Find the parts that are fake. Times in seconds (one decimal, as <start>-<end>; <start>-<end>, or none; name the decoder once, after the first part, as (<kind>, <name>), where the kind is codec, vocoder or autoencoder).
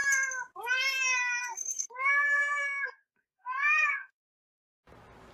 1.4-4.6 (codec, SNAC)